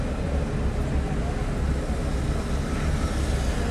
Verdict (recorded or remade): recorded